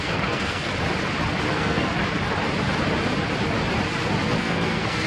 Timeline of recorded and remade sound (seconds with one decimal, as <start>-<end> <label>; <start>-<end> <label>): 0.0-0.7 remade; 0.7-1.5 recorded; 1.5-1.9 remade; 1.9-4.4 recorded; 4.4-5.1 remade